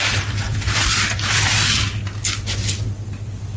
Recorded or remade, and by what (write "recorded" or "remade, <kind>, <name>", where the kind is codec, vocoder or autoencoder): recorded